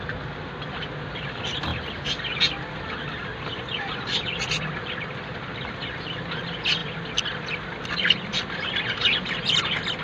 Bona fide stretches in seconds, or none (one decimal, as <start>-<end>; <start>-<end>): 0.0-10.0